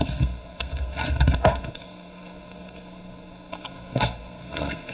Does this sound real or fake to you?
fake